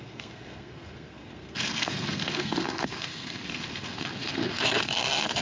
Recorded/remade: remade